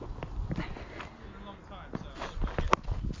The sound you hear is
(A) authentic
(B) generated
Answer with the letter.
A